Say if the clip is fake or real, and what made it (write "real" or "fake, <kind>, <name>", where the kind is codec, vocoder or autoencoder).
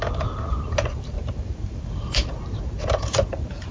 fake, vocoder, BigVGAN v2